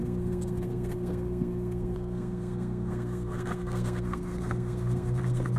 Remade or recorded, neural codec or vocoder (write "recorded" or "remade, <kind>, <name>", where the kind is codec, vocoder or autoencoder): remade, codec, SNAC